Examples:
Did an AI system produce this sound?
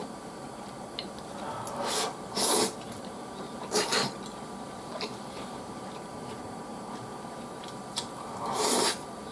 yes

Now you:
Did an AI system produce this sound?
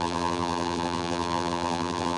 yes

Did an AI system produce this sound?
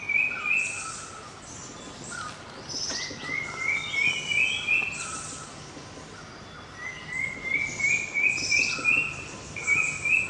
no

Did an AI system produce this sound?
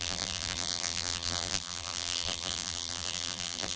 yes